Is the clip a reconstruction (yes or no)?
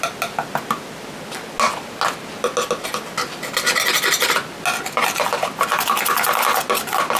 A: no